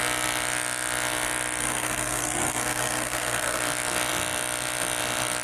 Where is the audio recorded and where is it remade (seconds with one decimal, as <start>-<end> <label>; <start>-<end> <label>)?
0.0-1.6 recorded; 1.6-3.6 remade; 3.6-5.4 recorded